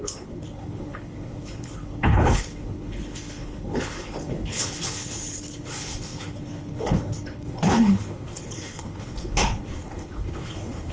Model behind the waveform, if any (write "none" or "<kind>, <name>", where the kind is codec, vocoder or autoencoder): codec, HILCodec